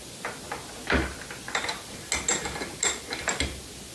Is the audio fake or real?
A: real